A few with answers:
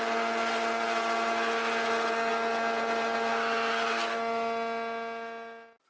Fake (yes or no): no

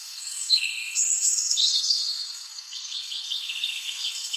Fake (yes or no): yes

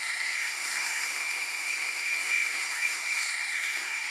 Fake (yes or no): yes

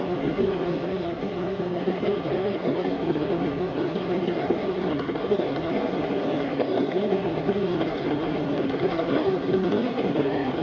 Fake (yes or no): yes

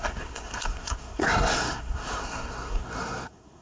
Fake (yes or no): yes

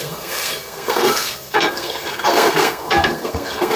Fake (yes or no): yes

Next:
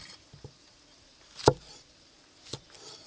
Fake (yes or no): no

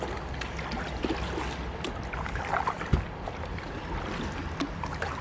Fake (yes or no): no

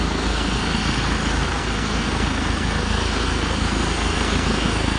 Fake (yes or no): yes